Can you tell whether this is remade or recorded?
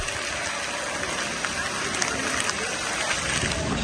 recorded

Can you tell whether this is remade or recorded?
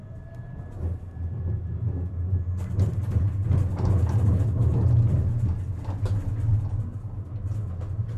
recorded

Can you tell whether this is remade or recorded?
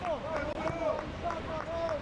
recorded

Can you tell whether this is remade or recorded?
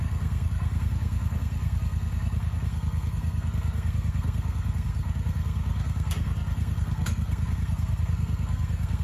remade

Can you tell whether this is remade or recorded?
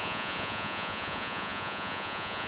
remade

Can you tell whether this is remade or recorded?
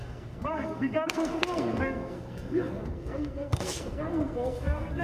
remade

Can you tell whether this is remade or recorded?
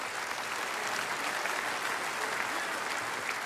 recorded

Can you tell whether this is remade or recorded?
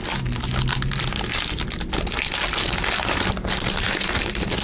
recorded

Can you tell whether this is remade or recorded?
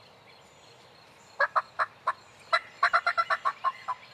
recorded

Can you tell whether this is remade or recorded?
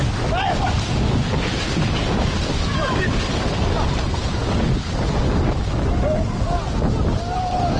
recorded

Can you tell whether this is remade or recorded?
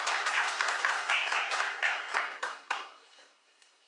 remade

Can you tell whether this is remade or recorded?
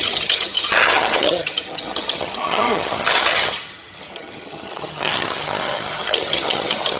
remade